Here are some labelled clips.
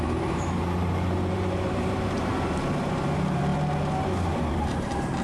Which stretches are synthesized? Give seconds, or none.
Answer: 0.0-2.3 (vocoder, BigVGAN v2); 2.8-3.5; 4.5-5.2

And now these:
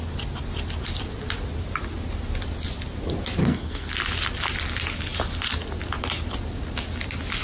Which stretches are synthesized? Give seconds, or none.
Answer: 3.4-3.9 (codec, SNAC)